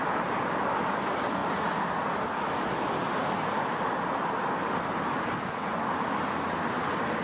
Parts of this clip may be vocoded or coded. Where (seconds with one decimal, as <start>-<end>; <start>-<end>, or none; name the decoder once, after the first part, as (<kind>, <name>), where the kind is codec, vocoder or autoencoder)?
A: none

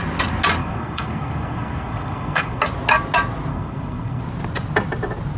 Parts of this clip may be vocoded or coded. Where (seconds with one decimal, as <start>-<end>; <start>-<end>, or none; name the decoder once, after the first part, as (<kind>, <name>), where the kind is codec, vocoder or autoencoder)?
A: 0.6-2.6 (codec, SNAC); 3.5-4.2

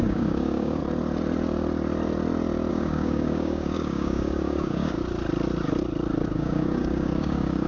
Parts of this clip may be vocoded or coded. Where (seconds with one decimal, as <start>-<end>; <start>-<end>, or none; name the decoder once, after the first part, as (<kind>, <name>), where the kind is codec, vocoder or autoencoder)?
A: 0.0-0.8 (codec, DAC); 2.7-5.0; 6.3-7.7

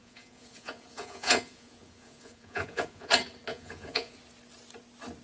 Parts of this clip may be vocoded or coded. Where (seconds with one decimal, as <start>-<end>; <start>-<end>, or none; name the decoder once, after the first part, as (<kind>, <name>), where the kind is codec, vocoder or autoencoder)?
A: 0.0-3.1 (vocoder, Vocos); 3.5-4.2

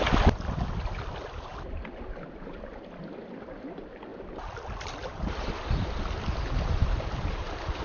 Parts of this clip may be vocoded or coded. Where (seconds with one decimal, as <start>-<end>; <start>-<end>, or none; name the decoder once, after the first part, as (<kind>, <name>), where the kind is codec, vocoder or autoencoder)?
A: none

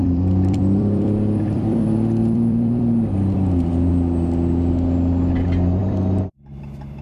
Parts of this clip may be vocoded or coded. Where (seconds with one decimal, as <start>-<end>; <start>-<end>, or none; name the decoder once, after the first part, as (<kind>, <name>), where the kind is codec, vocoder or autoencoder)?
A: 0.0-3.9 (vocoder, BigVGAN v2); 5.8-6.6

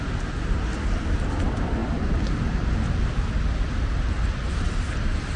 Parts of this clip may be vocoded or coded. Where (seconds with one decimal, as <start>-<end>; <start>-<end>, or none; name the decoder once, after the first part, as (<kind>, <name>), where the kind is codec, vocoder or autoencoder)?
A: none

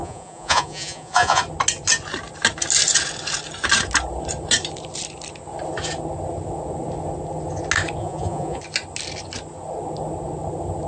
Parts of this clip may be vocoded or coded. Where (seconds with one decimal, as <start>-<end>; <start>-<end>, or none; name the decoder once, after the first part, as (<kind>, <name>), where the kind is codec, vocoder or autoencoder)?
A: 0.0-1.4 (vocoder, Vocos); 8.0-8.6